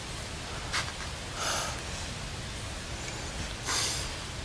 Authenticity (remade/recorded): recorded